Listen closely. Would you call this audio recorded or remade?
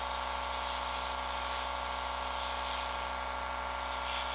recorded